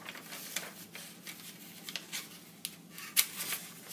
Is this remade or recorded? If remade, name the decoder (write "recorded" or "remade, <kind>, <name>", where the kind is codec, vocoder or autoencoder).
recorded